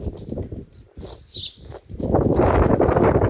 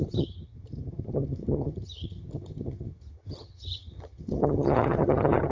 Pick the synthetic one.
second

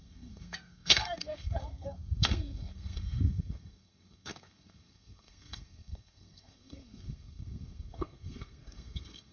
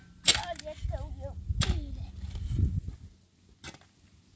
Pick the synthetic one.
first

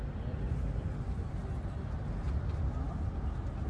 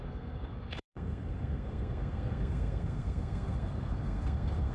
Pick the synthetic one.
second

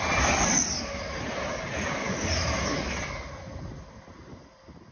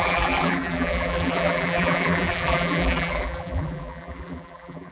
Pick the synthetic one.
second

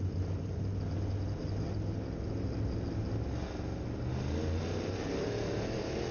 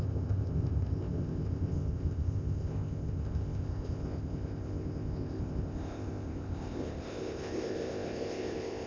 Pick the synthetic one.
second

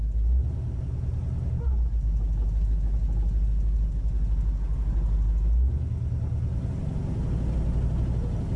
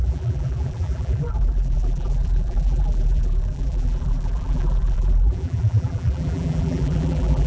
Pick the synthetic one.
second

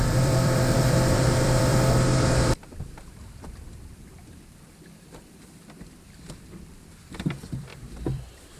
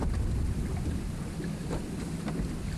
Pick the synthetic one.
first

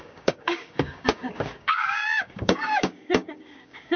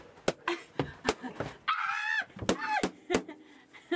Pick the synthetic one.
first